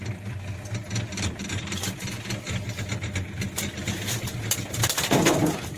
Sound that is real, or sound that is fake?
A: real